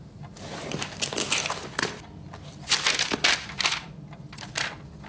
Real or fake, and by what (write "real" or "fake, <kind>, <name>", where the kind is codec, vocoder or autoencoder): real